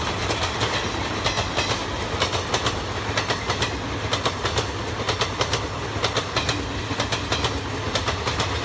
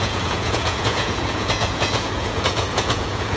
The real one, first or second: first